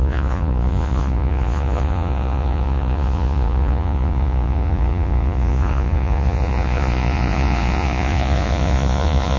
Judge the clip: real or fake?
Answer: fake